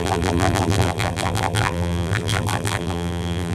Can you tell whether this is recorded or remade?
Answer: remade